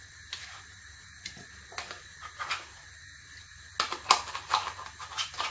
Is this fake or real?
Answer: real